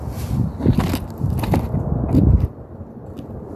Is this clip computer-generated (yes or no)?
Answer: no